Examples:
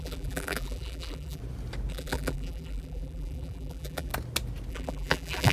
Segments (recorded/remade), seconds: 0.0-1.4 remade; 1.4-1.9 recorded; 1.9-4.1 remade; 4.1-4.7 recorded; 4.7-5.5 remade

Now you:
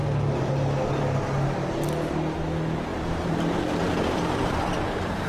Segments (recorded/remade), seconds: 0.0-2.9 recorded; 2.9-5.3 remade

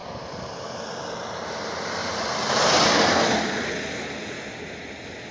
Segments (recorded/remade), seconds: 0.0-5.3 recorded

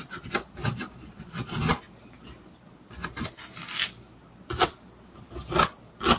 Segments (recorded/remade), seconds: 0.0-6.2 recorded